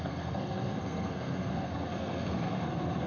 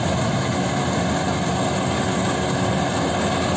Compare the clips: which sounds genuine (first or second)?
second